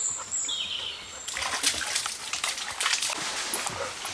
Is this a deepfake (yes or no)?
no